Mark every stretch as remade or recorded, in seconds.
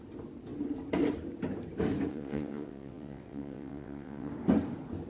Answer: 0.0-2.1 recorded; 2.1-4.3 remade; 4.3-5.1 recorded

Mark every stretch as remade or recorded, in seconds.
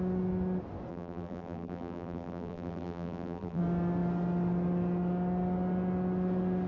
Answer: 0.0-0.9 recorded; 0.9-3.6 remade; 3.6-6.7 recorded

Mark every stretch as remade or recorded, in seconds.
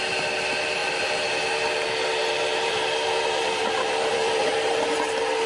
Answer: 0.0-0.8 recorded; 0.8-1.3 remade; 1.3-2.2 recorded; 2.2-5.5 remade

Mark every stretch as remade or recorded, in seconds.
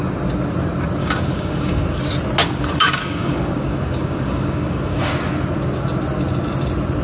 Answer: 0.0-1.0 recorded; 1.0-2.0 remade; 2.0-2.4 recorded; 2.4-5.1 remade; 5.1-7.0 recorded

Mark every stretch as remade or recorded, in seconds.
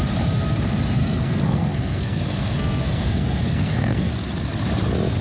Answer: 0.0-1.0 recorded; 1.0-4.1 remade; 4.1-5.2 recorded